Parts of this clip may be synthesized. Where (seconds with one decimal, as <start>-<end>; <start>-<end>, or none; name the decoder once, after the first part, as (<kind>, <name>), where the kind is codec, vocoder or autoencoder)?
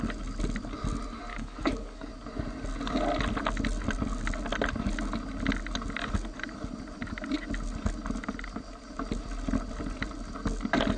1.3-2.1 (codec, DAC)